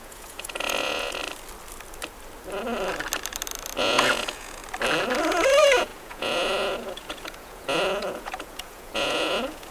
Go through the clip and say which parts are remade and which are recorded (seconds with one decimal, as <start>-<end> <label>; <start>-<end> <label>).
0.0-1.2 remade; 1.2-3.8 recorded; 3.8-4.6 remade; 4.6-5.2 recorded; 5.2-9.7 remade